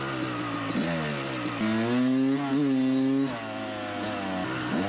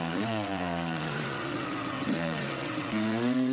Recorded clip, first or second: first